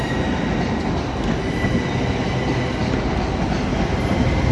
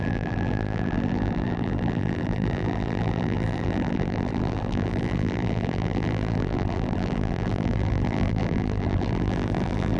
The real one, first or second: first